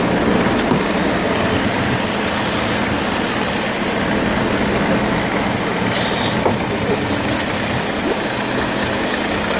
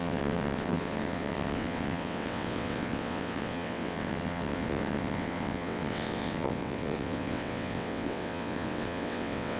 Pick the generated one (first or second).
second